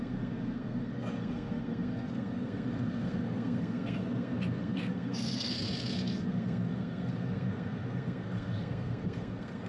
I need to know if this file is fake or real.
fake